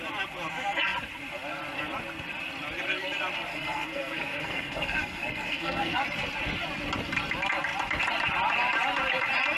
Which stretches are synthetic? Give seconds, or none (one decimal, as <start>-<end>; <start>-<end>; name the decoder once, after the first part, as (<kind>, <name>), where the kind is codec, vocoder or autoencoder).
3.5-6.0 (codec, SNAC)